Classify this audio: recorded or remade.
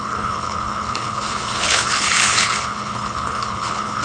remade